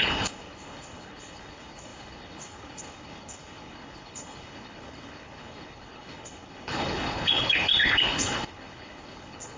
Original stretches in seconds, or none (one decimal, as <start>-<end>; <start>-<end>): none

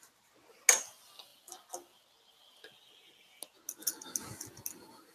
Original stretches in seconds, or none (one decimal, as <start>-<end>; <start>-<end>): 0.0-5.1

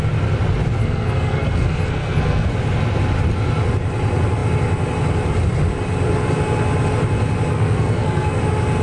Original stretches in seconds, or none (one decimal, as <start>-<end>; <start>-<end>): 0.0-0.8; 2.5-7.5; 8.4-8.8

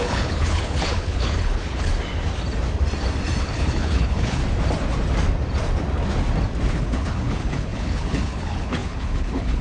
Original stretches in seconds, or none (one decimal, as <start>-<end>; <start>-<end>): 1.9-3.4; 4.4-6.7

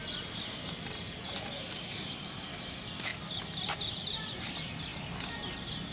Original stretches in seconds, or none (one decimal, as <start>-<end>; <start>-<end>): 4.9-5.9

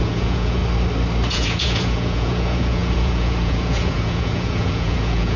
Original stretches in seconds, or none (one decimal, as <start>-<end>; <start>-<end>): 0.6-1.3

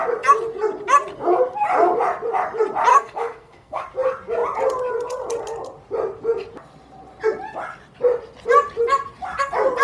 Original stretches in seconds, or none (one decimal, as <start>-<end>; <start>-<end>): 0.0-2.9; 3.8-9.8